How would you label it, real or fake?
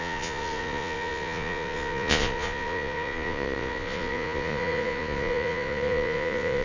fake